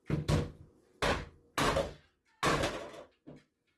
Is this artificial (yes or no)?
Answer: no